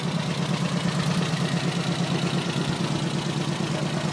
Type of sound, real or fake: real